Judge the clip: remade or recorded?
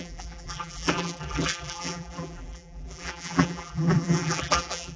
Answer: remade